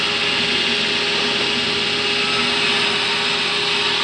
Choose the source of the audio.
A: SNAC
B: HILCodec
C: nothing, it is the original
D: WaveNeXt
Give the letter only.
C